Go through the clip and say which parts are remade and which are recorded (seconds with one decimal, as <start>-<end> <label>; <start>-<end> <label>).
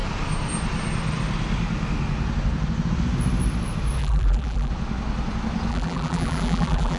0.0-4.0 recorded; 4.0-4.7 remade; 4.7-5.7 recorded; 5.7-7.0 remade